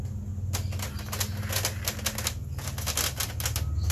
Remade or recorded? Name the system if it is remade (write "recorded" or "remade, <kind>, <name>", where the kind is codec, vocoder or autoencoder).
recorded